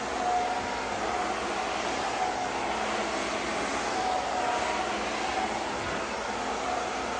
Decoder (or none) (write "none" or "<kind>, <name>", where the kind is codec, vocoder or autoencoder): none